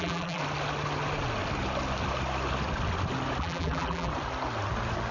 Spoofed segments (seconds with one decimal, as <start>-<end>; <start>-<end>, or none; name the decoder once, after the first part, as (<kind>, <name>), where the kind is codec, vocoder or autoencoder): 0.0-0.4 (vocoder, BigVGAN v2); 3.4-4.1